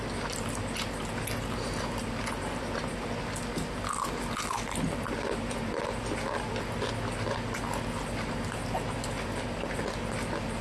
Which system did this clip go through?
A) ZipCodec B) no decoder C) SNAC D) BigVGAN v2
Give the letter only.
B